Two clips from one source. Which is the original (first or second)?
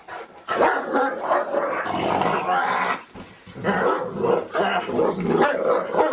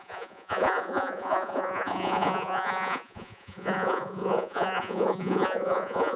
first